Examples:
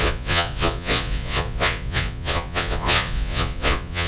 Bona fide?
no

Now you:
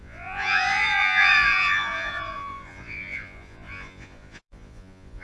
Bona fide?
no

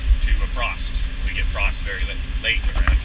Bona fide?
yes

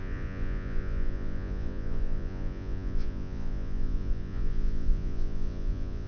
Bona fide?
no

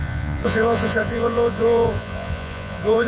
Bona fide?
no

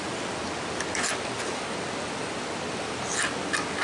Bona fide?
yes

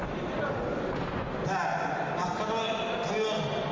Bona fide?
yes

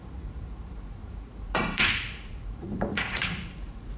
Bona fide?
no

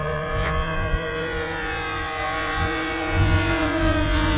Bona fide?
no